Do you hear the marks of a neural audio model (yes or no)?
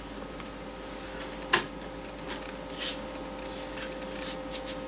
no